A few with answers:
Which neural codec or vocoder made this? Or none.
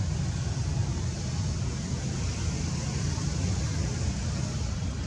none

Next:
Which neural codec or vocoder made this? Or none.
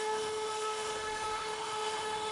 autoencoder, DAC-VAE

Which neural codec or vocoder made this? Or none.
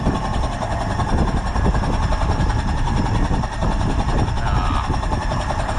none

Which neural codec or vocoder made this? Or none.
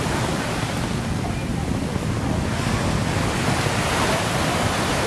none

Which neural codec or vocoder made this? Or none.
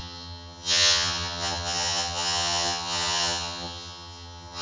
vocoder, HiFi-GAN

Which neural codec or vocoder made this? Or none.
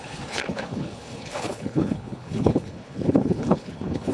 codec, HILCodec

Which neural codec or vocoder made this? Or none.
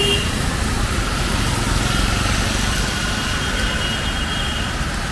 none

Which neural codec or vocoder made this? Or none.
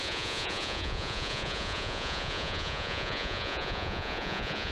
vocoder, Vocos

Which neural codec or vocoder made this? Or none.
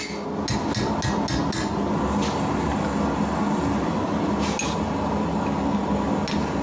none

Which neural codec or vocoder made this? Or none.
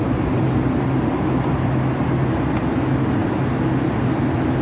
none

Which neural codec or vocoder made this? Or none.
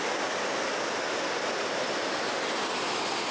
none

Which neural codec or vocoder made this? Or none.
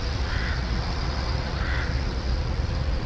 vocoder, Vocos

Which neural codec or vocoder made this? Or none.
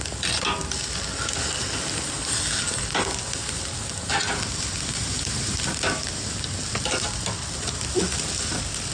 none